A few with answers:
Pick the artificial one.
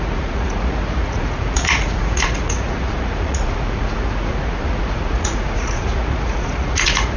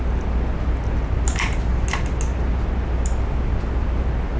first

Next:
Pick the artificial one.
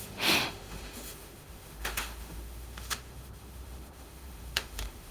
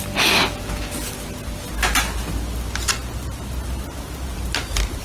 first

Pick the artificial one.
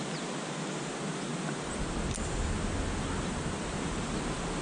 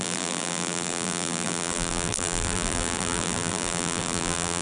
second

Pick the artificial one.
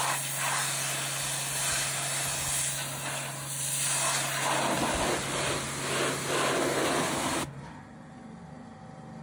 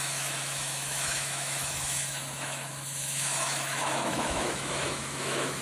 second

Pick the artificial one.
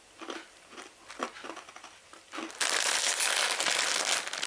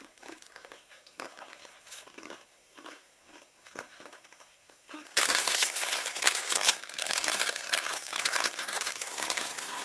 second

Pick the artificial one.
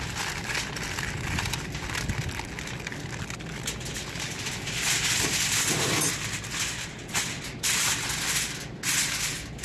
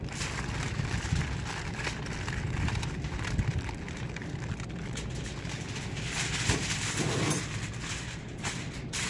second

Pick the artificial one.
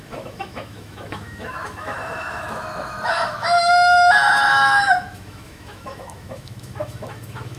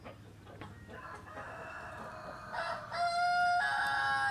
first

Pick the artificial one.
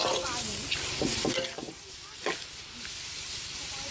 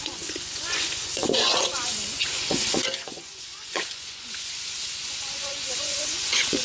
second